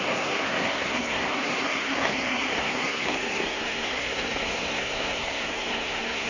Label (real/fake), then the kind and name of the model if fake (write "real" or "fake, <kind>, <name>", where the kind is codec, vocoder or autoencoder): fake, codec, SNAC